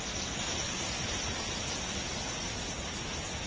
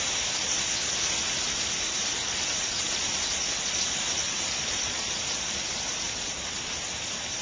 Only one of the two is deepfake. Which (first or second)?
second